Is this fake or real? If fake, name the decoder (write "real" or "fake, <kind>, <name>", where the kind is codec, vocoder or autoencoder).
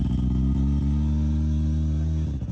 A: real